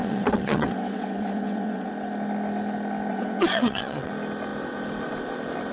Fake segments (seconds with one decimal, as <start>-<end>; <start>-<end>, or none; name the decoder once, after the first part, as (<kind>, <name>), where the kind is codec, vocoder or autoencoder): 0.0-1.9 (vocoder, WaveNeXt); 3.1-4.1